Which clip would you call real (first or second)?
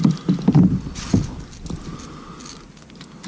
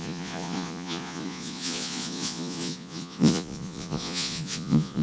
first